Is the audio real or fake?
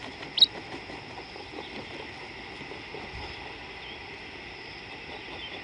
real